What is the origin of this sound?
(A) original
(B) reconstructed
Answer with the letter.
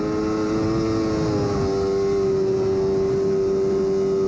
A